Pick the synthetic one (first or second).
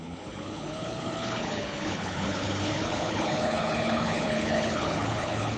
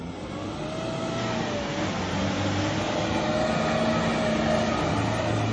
first